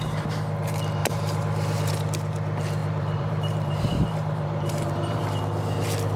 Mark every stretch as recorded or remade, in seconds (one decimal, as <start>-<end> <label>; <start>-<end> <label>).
0.0-1.0 recorded; 1.0-1.9 remade; 1.9-2.8 recorded; 2.8-5.2 remade; 5.2-6.2 recorded